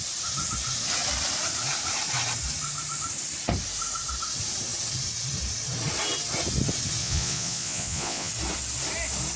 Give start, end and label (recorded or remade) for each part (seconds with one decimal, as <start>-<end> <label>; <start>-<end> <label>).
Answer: 0.0-7.0 recorded; 7.0-8.3 remade; 8.3-9.4 recorded